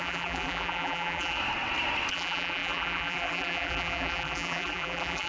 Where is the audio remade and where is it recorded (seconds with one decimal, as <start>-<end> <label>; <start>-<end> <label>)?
0.0-1.4 remade; 1.4-2.1 recorded; 2.1-5.3 remade